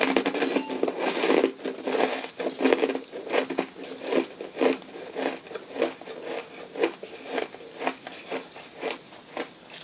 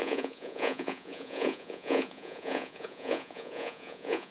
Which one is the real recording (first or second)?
first